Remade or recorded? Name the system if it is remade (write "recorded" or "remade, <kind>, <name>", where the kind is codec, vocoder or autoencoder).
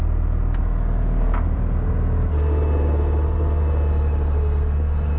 recorded